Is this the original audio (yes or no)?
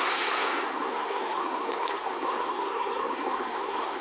no